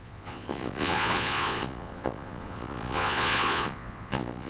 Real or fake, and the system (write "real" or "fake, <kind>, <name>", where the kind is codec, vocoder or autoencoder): fake, vocoder, Vocos